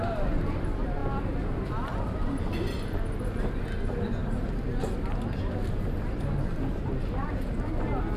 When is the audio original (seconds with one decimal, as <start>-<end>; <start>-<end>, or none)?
0.0-8.2